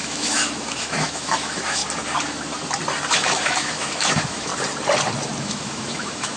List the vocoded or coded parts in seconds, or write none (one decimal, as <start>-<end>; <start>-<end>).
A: 0.0-1.8; 3.1-4.5; 5.4-6.4